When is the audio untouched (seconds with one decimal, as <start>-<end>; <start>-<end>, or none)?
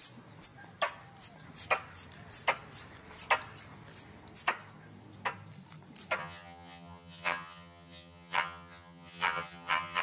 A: 0.0-6.2